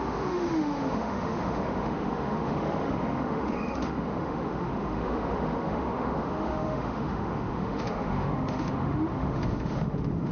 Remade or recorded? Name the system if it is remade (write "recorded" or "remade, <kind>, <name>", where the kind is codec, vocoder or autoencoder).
remade, autoencoder, DAC-VAE